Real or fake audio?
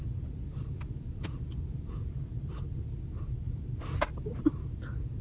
real